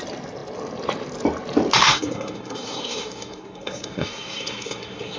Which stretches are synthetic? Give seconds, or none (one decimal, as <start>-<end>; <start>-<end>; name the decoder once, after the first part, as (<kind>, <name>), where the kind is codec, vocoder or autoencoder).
1.8-5.2 (codec, SNAC)